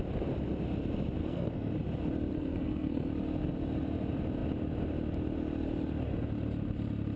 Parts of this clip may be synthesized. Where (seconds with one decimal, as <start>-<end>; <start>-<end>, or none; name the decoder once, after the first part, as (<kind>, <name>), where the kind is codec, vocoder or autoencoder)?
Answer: 1.2-1.7 (codec, SNAC); 2.3-3.1